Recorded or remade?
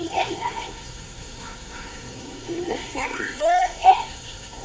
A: remade